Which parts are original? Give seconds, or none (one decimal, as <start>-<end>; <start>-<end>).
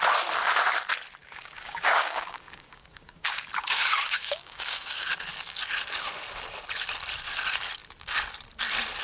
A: 0.0-1.2; 5.1-9.0